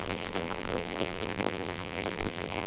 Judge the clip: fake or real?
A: fake